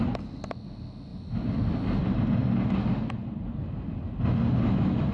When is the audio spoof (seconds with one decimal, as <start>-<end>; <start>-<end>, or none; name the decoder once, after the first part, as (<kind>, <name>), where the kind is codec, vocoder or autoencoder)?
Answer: 1.1-1.7 (vocoder, BigVGAN v2)